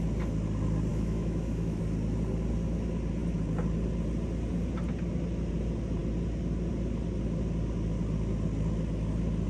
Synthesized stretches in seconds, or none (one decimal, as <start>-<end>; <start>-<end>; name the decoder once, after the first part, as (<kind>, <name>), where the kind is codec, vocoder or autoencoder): 0.9-1.8 (autoencoder, DAC-VAE)

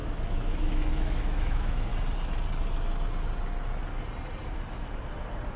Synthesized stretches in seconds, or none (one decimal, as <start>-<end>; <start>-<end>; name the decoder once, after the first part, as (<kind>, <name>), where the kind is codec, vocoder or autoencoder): 0.0-1.9 (autoencoder, DAC-VAE)

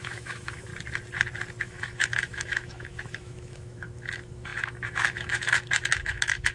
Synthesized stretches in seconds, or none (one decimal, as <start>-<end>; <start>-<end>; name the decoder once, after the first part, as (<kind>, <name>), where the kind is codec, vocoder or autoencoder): 0.0-0.7 (autoencoder, DAC-VAE); 1.6-6.5